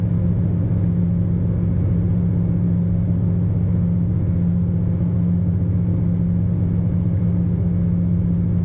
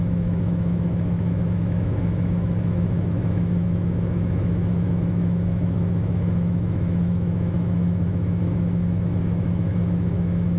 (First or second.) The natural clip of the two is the first